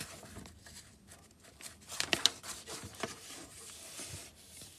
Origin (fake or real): real